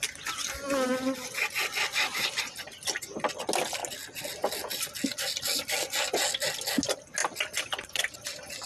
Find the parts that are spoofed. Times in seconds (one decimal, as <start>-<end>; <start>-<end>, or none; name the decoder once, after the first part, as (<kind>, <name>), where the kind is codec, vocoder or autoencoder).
none